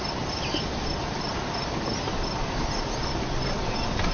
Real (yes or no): yes